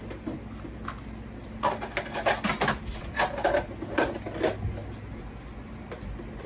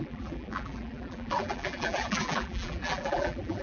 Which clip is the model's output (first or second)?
second